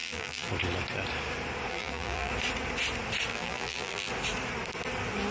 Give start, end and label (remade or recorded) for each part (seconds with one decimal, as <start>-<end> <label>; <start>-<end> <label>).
0.0-0.5 remade; 0.5-1.7 recorded; 1.7-2.3 remade; 2.3-3.3 recorded; 3.3-4.1 remade; 4.1-5.3 recorded